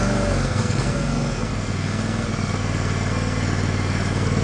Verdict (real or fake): fake